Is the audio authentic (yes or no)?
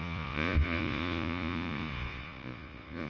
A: no